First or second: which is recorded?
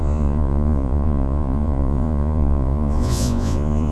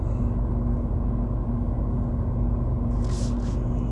second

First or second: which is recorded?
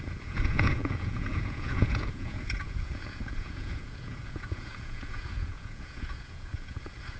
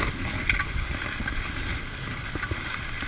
second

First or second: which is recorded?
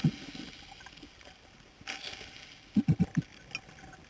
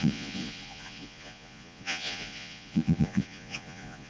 first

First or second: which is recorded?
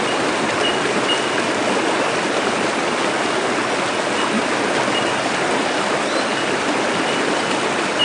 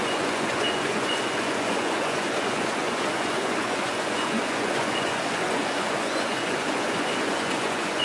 first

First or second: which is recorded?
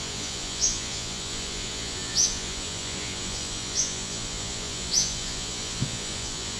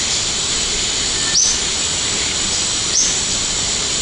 second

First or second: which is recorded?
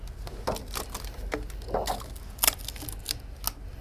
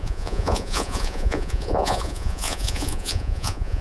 first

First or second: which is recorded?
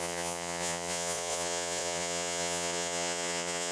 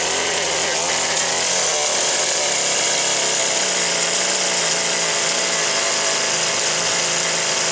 second